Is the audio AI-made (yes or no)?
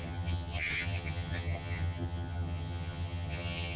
yes